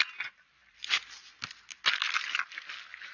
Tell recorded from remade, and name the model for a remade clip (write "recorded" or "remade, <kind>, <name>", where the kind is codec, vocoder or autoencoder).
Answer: recorded